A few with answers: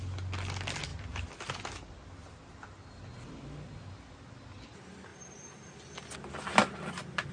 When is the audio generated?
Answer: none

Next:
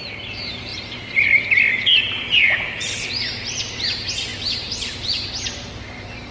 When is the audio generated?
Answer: 0.7-3.1

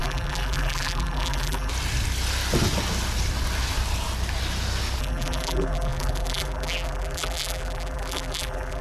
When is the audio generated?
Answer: 0.0-1.7; 5.0-8.8

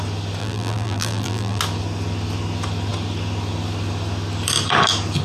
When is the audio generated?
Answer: 0.4-1.6